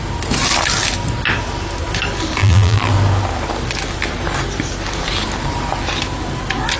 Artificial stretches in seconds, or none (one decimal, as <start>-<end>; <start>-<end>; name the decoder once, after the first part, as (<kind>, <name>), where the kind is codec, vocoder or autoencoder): 2.4-2.9 (vocoder, BigVGAN v2)